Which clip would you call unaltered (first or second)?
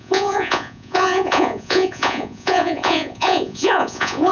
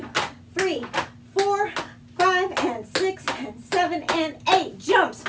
second